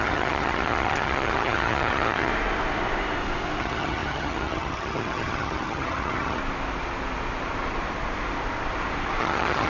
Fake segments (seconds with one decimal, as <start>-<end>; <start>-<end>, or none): 0.0-2.3; 3.6-6.4; 9.2-9.7